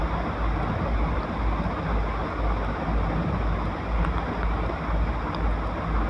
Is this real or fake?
real